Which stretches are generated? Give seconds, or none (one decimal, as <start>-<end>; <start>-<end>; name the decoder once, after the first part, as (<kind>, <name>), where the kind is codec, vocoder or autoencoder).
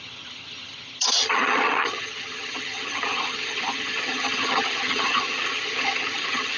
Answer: 0.0-6.6 (vocoder, HiFi-GAN)